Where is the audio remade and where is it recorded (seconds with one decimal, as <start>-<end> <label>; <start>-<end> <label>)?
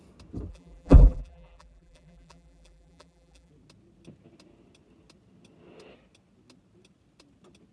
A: 0.0-0.5 recorded; 0.5-3.5 remade; 3.5-7.7 recorded